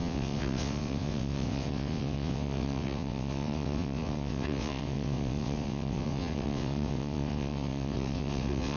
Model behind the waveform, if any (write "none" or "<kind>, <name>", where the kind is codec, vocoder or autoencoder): vocoder, WaveNeXt